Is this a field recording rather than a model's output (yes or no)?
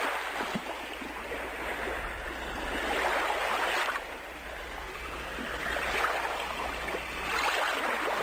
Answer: yes